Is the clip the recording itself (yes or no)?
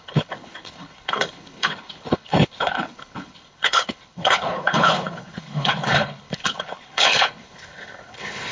no